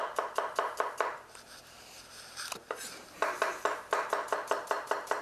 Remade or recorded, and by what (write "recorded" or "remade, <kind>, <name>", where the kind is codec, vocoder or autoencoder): remade, vocoder, BigVGAN v2